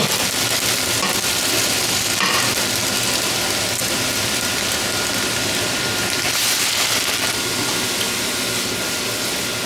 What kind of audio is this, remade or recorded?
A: recorded